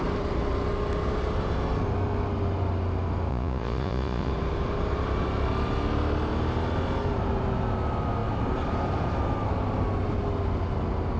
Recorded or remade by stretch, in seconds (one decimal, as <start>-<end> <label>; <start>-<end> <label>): 0.0-3.3 recorded; 3.3-4.3 remade; 4.3-11.2 recorded